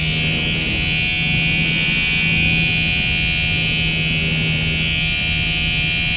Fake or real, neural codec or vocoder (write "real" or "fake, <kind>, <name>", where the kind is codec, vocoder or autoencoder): real